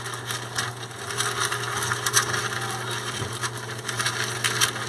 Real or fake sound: real